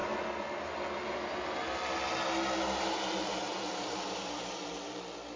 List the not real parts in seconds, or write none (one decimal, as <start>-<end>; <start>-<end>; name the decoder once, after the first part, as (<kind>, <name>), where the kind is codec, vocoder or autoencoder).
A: none